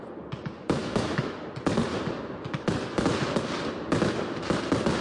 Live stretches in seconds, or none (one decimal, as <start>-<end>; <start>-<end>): 0.0-0.8; 1.4-5.0